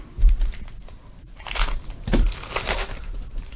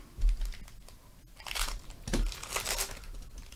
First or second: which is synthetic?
first